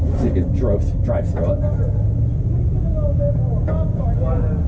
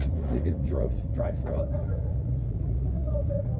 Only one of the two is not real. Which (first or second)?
second